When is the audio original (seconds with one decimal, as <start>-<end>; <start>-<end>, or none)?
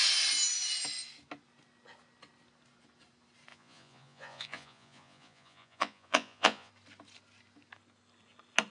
0.0-3.5; 6.7-8.7